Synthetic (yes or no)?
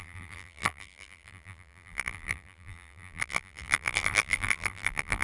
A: yes